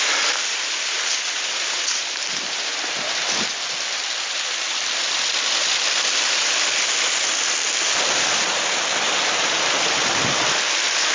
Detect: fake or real fake